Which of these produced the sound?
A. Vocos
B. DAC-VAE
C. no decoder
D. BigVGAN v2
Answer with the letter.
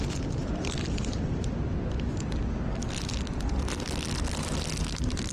C